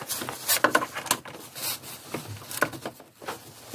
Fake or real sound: real